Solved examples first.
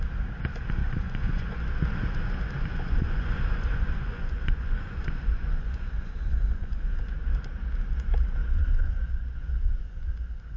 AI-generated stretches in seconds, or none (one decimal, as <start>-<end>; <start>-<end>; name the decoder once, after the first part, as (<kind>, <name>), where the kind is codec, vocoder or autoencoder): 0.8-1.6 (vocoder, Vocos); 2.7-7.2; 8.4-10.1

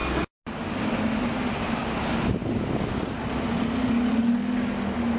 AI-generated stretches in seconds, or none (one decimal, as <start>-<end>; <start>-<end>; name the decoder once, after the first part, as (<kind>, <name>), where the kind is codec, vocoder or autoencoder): none

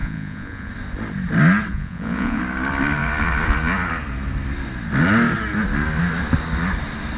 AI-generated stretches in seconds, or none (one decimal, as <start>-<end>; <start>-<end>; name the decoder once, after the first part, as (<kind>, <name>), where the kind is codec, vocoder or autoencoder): 0.0-0.7 (vocoder, Vocos); 1.7-2.4

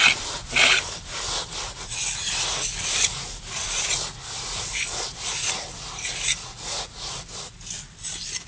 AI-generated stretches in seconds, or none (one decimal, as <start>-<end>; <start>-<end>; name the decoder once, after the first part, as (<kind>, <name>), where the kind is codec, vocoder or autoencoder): 6.4-7.1 (vocoder, Vocos)